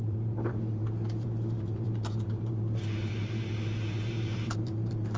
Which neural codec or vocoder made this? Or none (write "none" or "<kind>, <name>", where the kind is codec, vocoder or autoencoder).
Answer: vocoder, BigVGAN v2